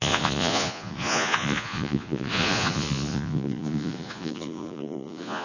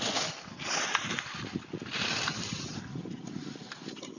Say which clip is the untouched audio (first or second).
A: second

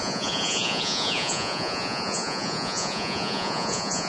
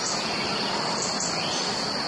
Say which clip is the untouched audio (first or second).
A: second